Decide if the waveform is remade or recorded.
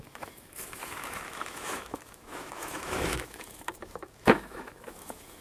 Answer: remade